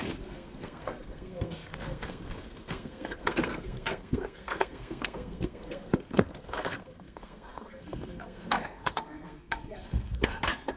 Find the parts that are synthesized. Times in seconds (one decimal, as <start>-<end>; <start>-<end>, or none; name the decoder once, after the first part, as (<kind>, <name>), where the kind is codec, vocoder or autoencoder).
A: 0.0-10.8 (codec, SNAC)